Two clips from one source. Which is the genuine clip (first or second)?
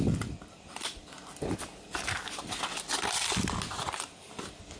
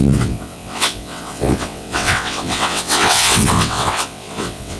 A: first